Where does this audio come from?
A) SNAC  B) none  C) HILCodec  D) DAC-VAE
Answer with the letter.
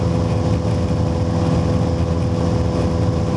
B